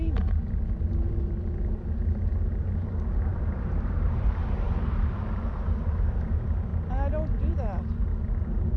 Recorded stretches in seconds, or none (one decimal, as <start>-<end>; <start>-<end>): 0.0-3.3; 5.7-8.8